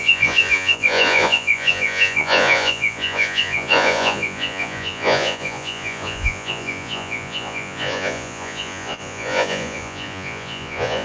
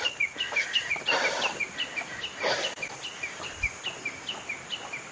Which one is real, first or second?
second